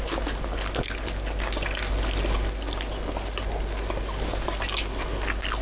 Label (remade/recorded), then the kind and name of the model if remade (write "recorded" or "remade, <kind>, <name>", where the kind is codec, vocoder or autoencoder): recorded